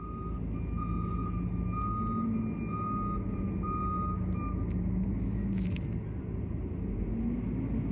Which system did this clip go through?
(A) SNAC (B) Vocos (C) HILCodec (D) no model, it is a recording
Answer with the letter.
D